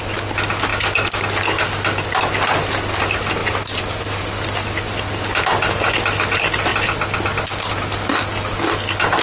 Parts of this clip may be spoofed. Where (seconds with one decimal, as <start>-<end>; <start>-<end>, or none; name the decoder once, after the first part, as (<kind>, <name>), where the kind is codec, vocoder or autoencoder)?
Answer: 0.7-1.3 (vocoder, BigVGAN v2); 3.4-4.0